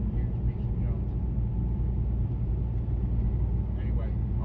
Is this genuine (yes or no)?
yes